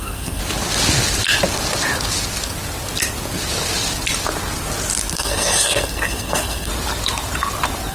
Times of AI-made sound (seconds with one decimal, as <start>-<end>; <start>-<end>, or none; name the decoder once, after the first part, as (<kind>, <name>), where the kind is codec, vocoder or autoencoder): 0.0-0.4 (codec, SNAC); 5.1-6.7